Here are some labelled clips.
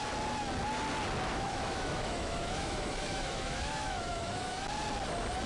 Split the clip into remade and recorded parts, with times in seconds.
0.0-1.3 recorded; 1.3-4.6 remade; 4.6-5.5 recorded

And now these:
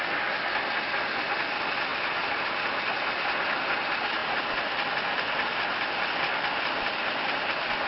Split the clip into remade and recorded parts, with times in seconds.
0.0-1.9 recorded; 1.9-2.5 remade; 2.5-4.2 recorded; 4.2-4.9 remade; 4.9-7.9 recorded

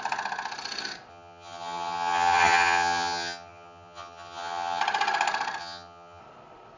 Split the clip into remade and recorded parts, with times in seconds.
0.0-1.1 recorded; 1.1-4.8 remade; 4.8-5.6 recorded; 5.6-6.2 remade; 6.2-6.8 recorded

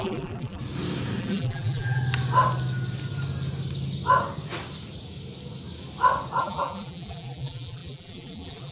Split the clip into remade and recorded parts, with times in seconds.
0.0-0.6 remade; 0.6-1.2 recorded; 1.2-2.0 remade; 2.0-6.4 recorded; 6.4-8.7 remade

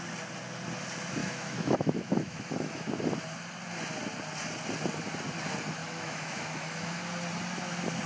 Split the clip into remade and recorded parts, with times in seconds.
0.0-1.2 recorded; 1.2-3.0 remade; 3.0-5.8 recorded; 5.8-7.0 remade; 7.0-8.1 recorded